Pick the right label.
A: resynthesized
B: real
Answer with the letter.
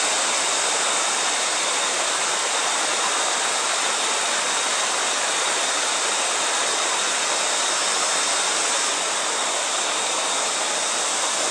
B